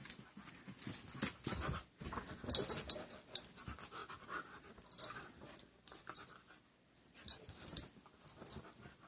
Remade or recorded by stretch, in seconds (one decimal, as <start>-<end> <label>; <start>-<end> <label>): 0.0-9.1 recorded